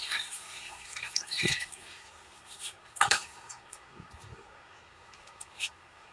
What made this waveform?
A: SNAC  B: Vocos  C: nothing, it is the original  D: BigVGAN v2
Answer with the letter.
A